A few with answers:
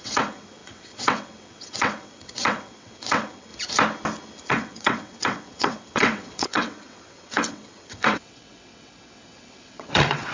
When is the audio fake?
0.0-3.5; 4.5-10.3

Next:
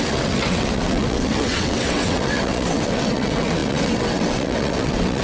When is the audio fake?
0.0-5.2

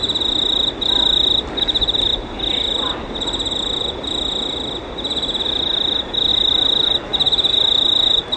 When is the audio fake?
none

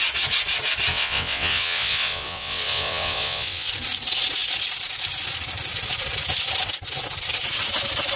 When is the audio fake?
0.9-3.7

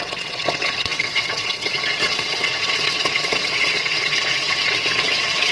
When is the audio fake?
0.0-5.5

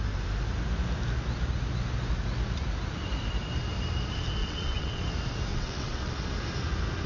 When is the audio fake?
4.4-5.0; 5.5-6.1